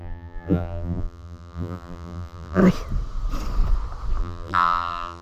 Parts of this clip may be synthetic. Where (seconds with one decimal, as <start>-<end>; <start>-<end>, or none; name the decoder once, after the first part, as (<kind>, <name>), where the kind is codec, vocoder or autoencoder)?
0.0-2.6 (vocoder, BigVGAN v2); 4.2-5.2

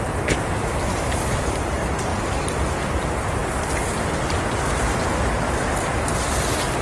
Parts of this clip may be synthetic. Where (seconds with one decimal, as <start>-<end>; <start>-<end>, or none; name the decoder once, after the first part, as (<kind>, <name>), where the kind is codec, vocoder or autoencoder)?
0.0-2.1 (vocoder, BigVGAN v2); 2.7-3.4; 6.3-6.8

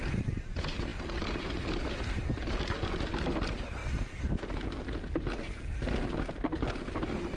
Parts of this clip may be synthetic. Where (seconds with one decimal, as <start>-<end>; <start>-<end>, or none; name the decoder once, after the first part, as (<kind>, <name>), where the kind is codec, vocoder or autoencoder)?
none